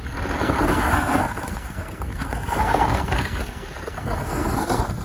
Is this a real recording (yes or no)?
no